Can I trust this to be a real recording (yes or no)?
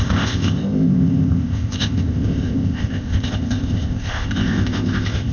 no